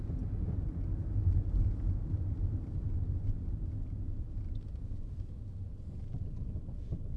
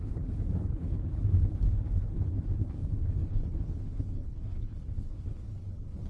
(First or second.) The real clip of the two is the first